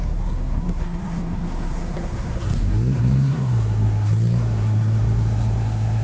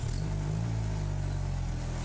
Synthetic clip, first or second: first